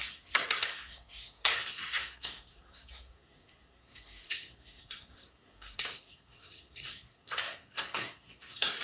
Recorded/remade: remade